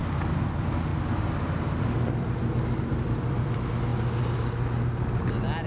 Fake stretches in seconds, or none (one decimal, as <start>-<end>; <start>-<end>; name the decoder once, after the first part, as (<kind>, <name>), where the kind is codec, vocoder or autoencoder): none